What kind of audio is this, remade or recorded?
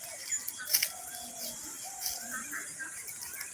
recorded